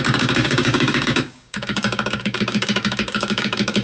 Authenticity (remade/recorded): remade